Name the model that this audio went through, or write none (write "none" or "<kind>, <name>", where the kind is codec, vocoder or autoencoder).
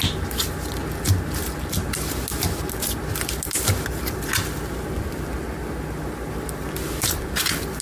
none